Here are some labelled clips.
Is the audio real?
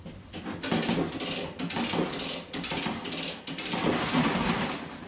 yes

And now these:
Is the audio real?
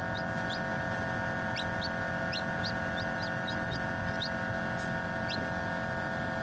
yes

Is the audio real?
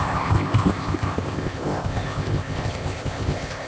no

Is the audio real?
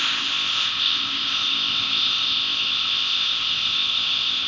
no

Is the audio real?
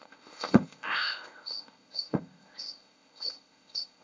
no